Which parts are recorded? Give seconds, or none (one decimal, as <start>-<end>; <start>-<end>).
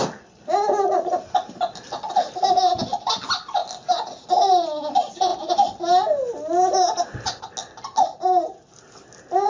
0.0-9.5